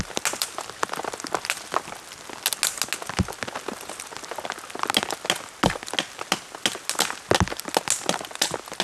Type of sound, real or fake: real